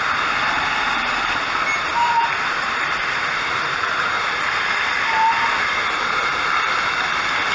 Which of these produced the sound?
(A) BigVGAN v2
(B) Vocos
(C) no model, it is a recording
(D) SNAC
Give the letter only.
C